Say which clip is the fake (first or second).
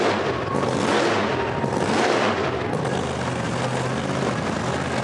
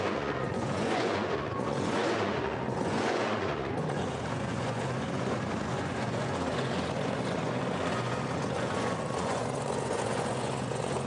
second